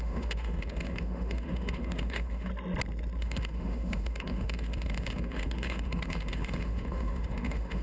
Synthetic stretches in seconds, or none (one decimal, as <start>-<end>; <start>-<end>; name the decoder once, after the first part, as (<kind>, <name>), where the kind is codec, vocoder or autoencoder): 0.0-2.5 (autoencoder, DAC-VAE); 3.2-7.8